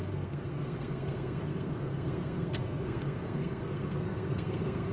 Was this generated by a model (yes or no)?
yes